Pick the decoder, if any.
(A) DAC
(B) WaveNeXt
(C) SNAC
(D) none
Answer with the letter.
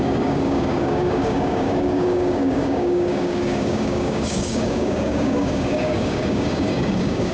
A